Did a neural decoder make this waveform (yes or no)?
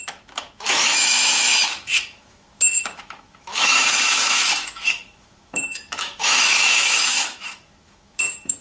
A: yes